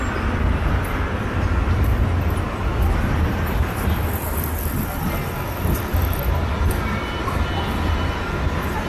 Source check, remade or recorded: recorded